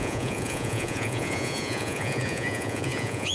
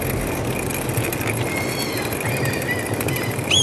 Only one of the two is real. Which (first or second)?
second